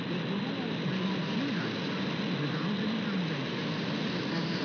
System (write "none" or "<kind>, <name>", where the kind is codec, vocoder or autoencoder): none